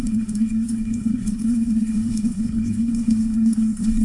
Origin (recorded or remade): remade